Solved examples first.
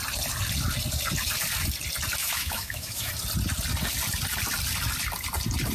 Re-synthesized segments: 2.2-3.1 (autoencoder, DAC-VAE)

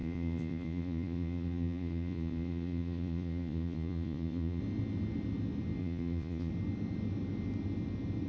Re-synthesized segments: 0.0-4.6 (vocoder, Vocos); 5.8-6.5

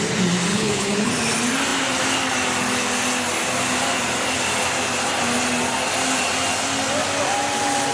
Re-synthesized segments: 0.5-1.1 (codec, HILCodec)

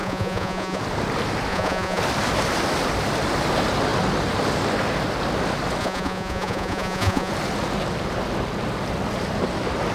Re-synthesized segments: 0.0-0.8 (vocoder, Vocos); 1.5-2.0; 5.8-7.3

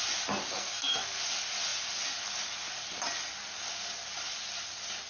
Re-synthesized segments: 0.5-1.2 (codec, SNAC)

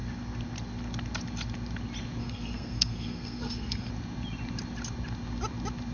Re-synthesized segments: 2.2-3.9 (codec, SNAC)

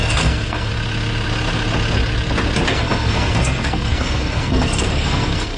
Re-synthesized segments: 0.0-0.7 (codec, SNAC); 2.7-5.6

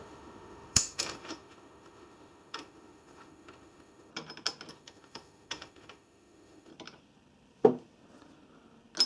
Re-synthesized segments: 0.0-4.1 (autoencoder, DAC-VAE); 4.7-6.7